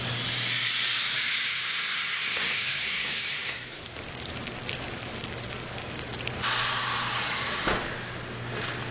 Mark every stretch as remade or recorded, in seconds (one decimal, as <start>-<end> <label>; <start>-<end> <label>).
0.0-1.5 recorded; 1.5-3.8 remade; 3.8-8.9 recorded